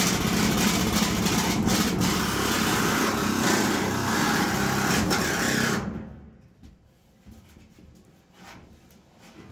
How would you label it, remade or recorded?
recorded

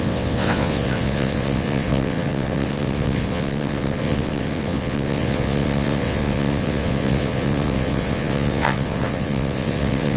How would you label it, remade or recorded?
remade